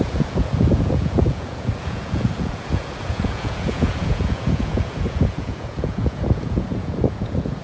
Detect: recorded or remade remade